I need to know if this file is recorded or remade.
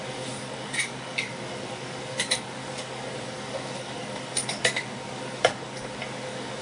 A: remade